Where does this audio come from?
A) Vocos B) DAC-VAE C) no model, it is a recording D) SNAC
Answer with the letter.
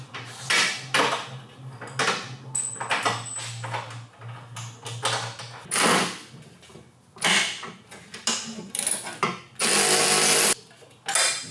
C